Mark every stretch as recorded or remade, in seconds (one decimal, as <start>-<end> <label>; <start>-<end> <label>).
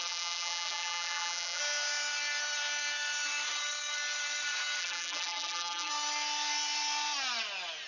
0.0-1.6 remade; 1.6-4.8 recorded; 4.8-5.9 remade; 5.9-7.9 recorded